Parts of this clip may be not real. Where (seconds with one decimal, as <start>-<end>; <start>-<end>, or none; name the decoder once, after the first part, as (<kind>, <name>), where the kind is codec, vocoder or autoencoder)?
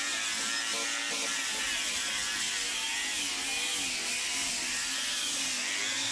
none